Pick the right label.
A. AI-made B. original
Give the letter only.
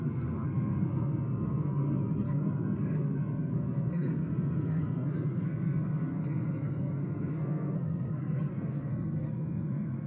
A